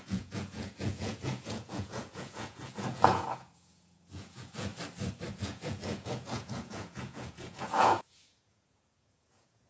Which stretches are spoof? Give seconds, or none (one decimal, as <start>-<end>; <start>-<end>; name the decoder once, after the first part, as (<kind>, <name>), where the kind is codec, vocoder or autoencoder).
0.0-4.7 (vocoder, Vocos); 5.3-9.7